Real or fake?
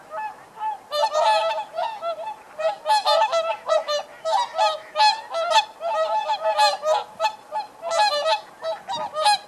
real